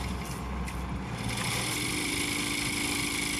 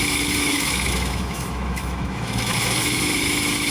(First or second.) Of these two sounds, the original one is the first